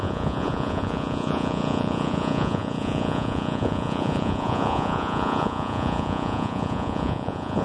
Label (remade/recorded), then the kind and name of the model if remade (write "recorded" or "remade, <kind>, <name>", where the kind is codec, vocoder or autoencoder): remade, vocoder, Vocos